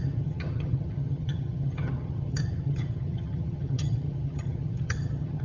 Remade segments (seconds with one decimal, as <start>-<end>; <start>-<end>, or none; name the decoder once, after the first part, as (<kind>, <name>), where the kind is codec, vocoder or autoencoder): 0.0-5.4 (vocoder, HiFi-GAN)